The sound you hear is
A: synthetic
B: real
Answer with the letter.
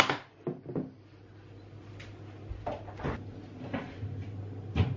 B